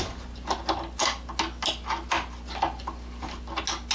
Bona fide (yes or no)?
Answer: yes